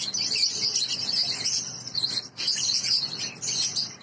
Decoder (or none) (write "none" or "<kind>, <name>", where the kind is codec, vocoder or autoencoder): none